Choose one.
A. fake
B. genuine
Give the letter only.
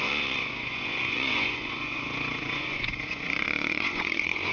A